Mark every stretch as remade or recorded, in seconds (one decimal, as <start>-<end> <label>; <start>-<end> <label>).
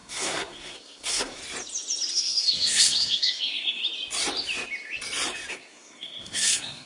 0.0-1.4 remade; 1.4-2.1 recorded; 2.1-3.8 remade; 3.8-5.5 recorded; 5.5-6.9 remade